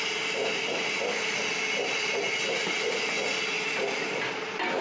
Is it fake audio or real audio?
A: real